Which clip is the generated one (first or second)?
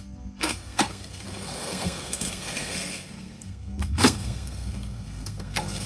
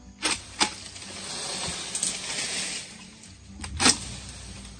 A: first